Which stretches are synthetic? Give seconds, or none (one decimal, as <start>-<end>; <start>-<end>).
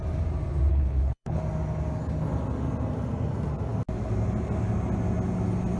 0.7-1.4